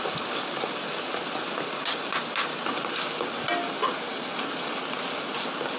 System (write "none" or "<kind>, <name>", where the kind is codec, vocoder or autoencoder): none